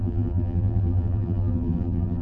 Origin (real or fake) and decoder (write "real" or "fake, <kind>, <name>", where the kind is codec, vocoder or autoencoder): fake, vocoder, BigVGAN v2